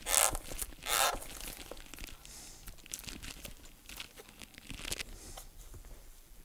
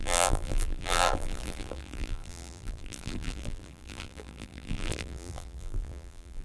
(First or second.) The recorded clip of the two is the first